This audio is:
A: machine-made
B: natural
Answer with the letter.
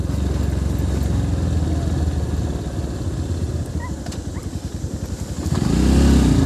B